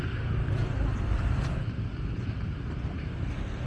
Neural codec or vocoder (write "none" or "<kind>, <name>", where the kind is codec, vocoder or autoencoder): none